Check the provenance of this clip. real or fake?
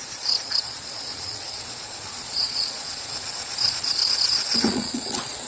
fake